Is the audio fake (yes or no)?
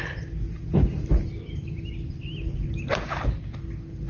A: no